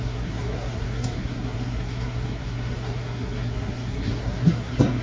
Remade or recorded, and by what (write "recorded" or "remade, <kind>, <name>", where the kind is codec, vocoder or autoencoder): remade, codec, SNAC